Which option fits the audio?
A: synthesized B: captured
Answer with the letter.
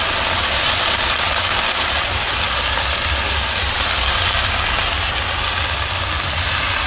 B